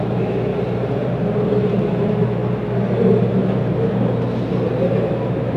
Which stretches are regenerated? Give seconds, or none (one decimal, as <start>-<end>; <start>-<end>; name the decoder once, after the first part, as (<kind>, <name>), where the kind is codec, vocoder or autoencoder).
0.0-0.5 (autoencoder, DAC-VAE); 1.8-2.4; 5.0-5.6

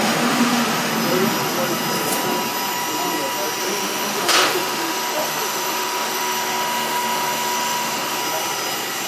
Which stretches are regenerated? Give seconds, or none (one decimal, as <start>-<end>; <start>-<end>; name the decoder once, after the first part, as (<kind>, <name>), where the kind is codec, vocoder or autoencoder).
0.0-0.9 (autoencoder, DAC-VAE); 3.6-8.2

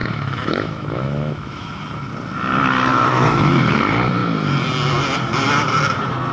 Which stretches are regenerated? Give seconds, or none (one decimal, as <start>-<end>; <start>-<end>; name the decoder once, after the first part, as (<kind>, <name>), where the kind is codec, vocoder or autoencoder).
0.0-1.8 (autoencoder, DAC-VAE); 2.9-3.8

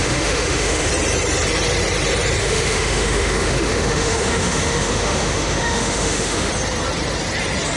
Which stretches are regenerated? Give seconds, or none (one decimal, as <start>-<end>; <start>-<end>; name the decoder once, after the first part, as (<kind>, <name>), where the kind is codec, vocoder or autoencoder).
0.0-0.9 (autoencoder, DAC-VAE); 2.4-6.5

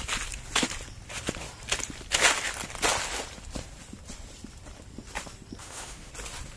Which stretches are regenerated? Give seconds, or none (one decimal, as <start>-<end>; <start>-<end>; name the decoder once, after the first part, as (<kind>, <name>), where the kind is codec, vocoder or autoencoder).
5.6-6.1 (autoencoder, DAC-VAE)